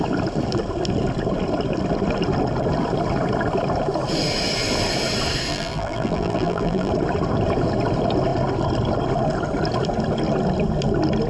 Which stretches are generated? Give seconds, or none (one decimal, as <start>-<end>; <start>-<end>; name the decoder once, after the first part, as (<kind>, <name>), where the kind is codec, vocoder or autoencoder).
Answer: 5.5-6.9 (vocoder, BigVGAN v2)